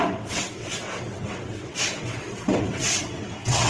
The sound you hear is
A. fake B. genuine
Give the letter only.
A